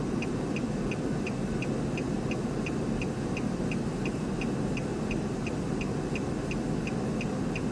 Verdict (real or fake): real